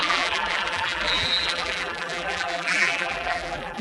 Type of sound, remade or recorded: remade